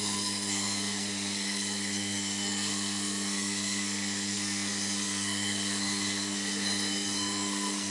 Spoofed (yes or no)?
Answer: yes